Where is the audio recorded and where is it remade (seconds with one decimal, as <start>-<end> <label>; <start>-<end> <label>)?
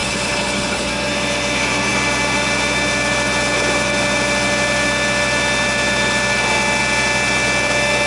0.0-0.9 remade; 0.9-8.1 recorded